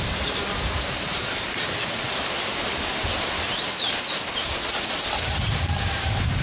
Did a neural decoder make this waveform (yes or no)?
yes